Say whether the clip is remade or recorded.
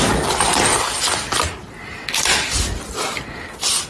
recorded